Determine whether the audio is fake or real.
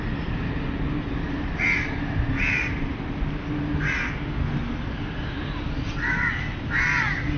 real